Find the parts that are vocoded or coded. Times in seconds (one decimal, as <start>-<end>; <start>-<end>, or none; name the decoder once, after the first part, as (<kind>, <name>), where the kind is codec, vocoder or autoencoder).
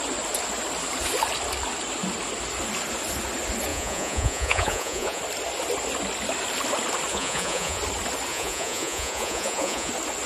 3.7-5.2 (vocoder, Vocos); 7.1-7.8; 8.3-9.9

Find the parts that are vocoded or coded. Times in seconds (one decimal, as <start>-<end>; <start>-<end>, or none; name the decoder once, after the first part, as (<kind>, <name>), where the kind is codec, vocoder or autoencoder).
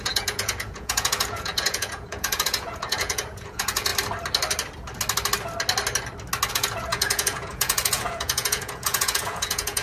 0.0-3.9 (vocoder, Vocos); 6.5-9.8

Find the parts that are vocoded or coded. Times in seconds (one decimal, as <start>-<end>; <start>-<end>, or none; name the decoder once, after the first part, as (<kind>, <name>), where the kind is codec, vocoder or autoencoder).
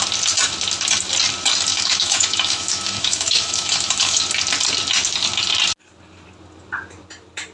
1.7-4.2 (autoencoder, DAC-VAE)